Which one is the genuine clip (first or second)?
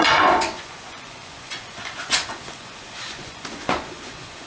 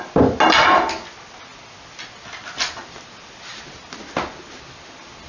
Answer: second